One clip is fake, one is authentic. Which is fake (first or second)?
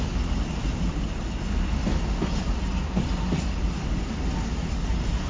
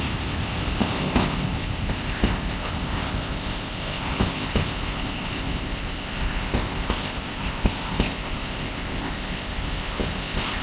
second